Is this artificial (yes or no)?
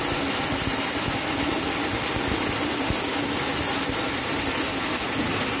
no